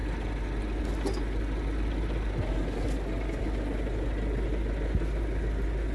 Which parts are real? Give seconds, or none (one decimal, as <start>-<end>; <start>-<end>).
0.0-5.9